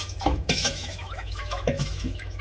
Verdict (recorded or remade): remade